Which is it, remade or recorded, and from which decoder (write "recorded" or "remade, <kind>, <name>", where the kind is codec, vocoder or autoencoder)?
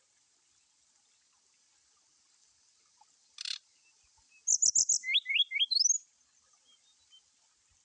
recorded